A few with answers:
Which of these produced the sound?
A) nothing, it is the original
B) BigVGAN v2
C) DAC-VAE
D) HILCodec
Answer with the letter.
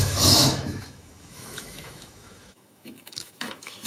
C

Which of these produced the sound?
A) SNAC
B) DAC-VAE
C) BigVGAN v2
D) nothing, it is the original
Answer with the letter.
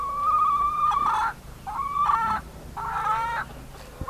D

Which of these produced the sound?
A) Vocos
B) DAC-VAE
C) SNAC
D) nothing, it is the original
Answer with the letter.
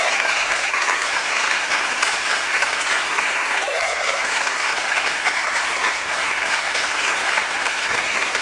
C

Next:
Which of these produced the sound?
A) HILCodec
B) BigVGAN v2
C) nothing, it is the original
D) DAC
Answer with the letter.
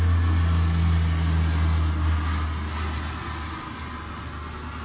C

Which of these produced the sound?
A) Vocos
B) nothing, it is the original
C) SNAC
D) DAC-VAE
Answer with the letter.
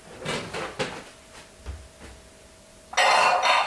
B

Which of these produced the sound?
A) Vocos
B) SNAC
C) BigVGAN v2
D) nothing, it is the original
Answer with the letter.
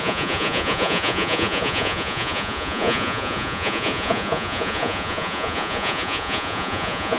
A